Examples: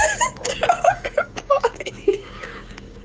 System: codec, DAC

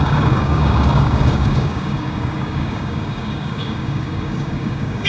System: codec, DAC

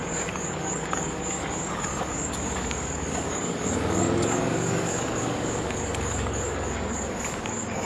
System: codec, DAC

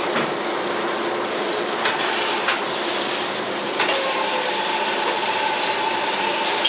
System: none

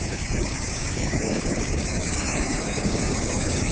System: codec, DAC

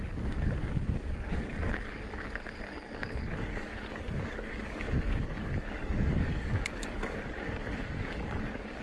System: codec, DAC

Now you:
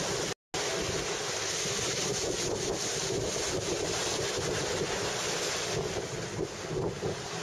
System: none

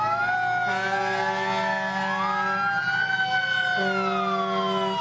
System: none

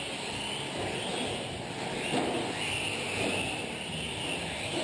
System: none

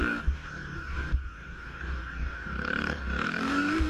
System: codec, DAC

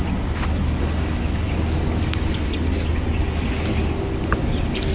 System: none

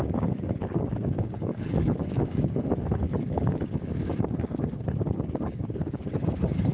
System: codec, DAC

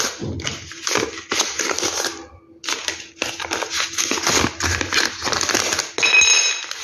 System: none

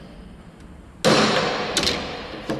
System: none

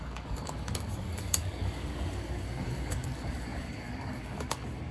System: codec, DAC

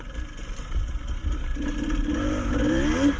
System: none